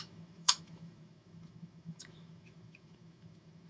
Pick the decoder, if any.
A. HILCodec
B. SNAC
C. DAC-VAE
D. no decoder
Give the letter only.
C